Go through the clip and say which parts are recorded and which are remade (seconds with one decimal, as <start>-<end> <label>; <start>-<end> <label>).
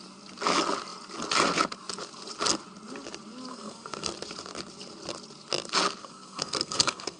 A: 0.0-3.5 recorded; 3.5-4.1 remade; 4.1-6.0 recorded; 6.0-7.2 remade